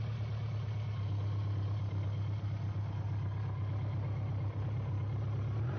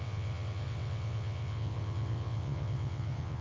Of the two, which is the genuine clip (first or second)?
first